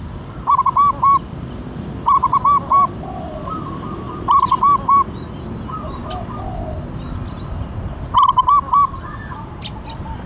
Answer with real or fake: real